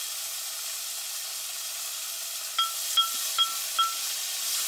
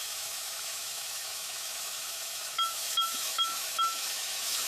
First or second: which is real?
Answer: first